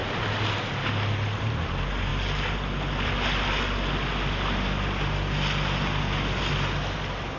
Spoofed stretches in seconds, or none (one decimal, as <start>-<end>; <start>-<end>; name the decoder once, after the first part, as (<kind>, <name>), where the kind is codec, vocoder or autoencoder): none